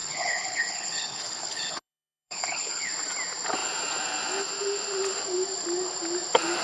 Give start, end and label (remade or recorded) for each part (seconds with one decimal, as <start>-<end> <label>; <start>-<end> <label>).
0.0-2.9 remade; 2.9-6.6 recorded